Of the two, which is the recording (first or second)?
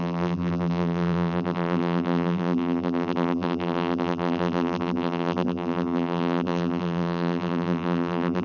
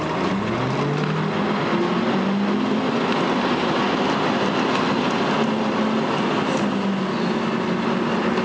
second